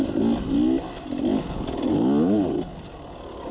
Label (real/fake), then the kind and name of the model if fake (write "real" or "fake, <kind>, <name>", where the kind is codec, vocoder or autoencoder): real